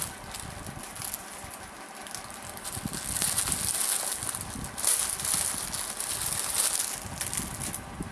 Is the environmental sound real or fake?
real